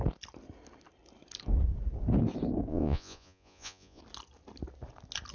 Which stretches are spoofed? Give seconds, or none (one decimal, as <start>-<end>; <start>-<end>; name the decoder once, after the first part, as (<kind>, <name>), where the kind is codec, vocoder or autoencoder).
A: 2.7-4.0 (vocoder, Vocos)